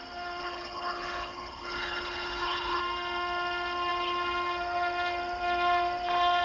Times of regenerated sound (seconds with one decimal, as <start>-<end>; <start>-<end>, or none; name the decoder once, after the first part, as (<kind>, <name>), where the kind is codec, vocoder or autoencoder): 0.4-2.8 (codec, HILCodec)